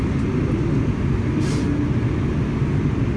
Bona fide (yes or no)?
yes